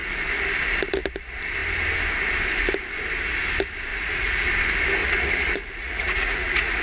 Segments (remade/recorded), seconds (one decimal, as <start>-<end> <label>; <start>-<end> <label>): 0.0-3.9 recorded; 3.9-4.5 remade; 4.5-5.0 recorded; 5.0-6.8 remade